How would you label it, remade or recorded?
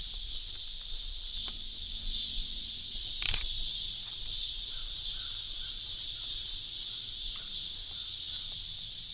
recorded